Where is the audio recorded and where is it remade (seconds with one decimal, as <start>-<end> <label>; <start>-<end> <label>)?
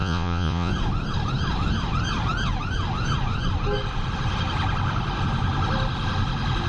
0.0-0.7 remade; 0.7-6.7 recorded